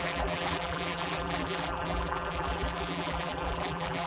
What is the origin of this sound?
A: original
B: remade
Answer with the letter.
B